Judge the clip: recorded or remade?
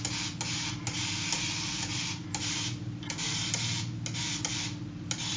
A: recorded